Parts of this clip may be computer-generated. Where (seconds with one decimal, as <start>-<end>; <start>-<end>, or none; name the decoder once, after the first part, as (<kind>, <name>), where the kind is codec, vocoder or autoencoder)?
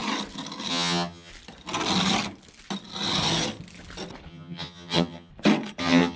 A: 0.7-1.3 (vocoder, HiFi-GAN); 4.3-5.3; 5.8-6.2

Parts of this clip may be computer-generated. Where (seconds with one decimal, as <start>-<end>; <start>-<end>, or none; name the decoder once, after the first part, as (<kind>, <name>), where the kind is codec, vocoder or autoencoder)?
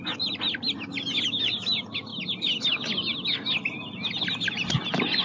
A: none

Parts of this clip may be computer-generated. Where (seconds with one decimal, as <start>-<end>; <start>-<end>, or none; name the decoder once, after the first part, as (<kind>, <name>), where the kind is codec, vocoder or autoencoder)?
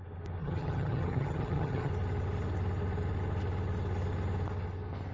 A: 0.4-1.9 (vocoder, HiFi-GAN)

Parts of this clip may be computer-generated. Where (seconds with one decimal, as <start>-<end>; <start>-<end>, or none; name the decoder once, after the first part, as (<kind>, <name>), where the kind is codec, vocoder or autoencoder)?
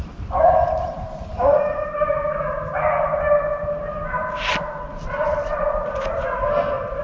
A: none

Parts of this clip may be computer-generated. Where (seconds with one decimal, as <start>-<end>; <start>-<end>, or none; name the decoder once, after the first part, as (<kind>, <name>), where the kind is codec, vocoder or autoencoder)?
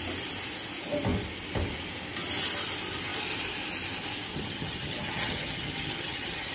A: 4.3-6.5 (vocoder, HiFi-GAN)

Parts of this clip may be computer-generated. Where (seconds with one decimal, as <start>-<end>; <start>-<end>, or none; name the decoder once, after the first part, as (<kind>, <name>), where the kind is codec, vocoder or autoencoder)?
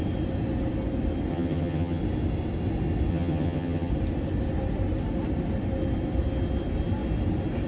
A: 1.3-2.0 (vocoder, HiFi-GAN); 3.1-3.9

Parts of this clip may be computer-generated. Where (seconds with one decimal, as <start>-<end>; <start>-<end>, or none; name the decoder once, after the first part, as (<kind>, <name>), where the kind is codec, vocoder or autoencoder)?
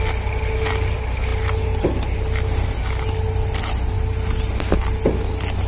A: none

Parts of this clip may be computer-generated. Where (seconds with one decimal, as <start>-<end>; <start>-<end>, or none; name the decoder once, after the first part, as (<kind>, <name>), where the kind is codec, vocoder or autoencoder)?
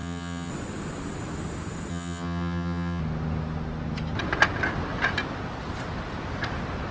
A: 0.0-0.5 (vocoder, HiFi-GAN); 1.9-3.0